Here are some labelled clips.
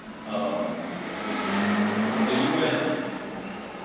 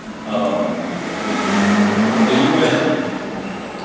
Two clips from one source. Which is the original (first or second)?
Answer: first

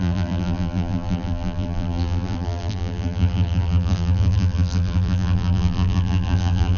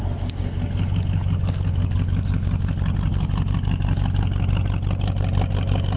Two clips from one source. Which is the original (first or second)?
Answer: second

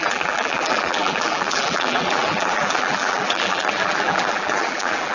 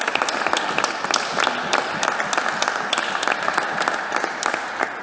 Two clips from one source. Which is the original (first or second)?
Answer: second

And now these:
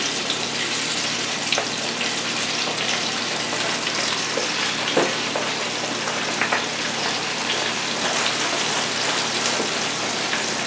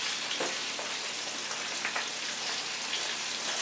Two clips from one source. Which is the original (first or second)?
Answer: second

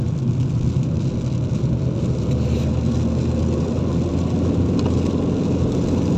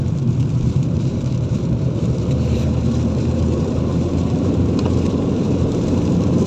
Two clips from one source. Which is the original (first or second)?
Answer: first